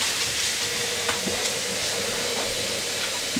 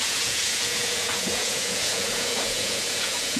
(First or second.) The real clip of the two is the first